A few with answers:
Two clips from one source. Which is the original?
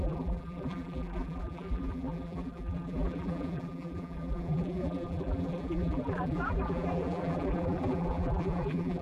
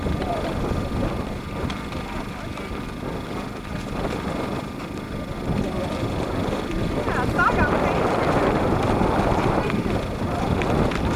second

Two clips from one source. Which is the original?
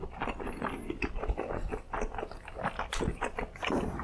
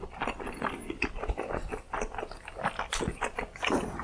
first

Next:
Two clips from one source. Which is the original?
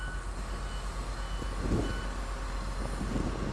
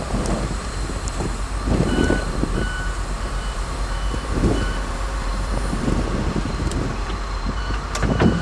first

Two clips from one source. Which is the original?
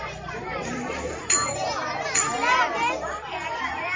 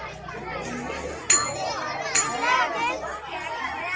second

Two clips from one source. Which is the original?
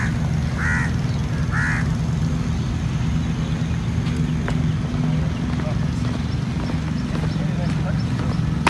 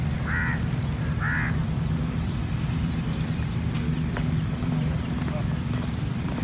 first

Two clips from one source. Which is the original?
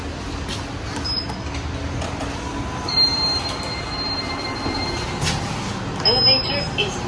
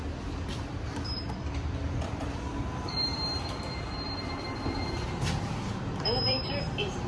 first